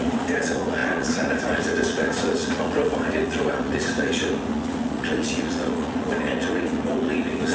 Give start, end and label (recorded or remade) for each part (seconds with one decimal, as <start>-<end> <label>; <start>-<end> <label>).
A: 0.0-7.5 remade